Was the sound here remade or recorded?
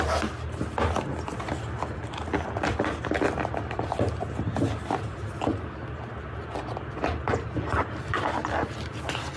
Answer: recorded